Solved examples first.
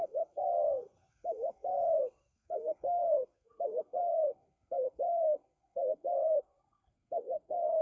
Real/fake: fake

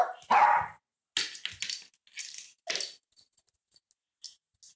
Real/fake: real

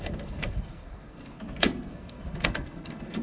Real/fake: fake